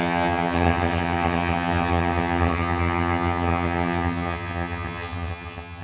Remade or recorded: remade